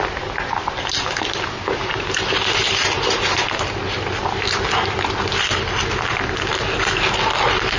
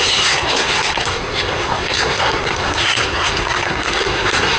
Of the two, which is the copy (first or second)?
second